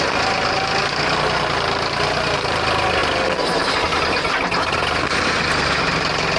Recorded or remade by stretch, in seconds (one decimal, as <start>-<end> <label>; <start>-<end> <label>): 0.0-6.4 recorded